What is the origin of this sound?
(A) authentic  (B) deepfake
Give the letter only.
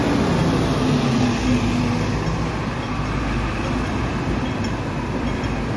A